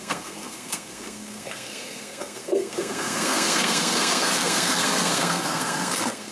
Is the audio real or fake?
fake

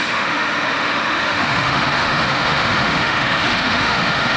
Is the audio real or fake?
fake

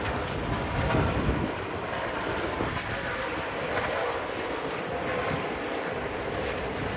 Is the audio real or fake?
fake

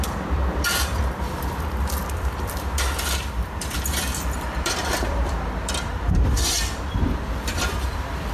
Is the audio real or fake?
fake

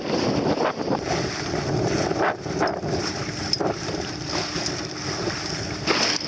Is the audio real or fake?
fake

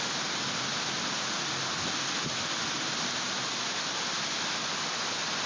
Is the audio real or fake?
real